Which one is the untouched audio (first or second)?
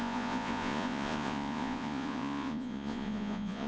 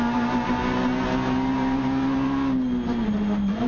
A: second